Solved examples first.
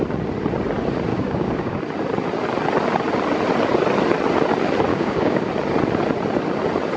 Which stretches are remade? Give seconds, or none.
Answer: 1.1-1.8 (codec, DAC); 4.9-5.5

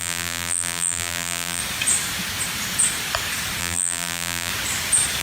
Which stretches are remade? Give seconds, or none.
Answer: 0.0-1.6 (vocoder, BigVGAN v2); 3.6-4.5

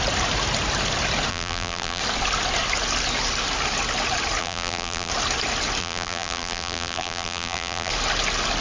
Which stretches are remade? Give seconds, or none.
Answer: 1.3-2.0 (vocoder, BigVGAN v2); 4.4-5.1; 5.8-7.9

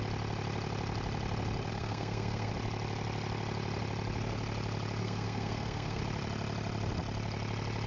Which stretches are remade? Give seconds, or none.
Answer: 1.7-2.5 (codec, SNAC); 5.0-6.0

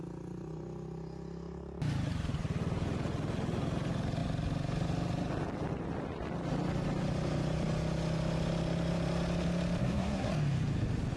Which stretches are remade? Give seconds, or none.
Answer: 9.8-10.3 (codec, SNAC)